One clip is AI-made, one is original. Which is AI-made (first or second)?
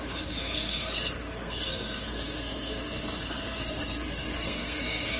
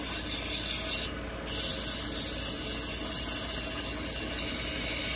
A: first